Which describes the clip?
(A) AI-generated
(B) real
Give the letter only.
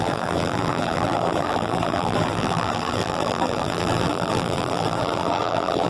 A